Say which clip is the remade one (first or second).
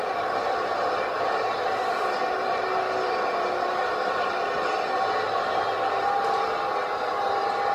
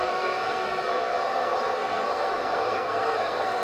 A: second